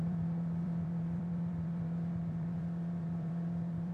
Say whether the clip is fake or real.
fake